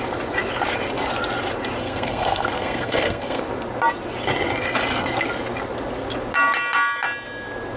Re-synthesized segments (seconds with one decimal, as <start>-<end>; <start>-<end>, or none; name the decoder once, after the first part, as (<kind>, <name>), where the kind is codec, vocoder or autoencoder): 1.8-3.4 (codec, SNAC)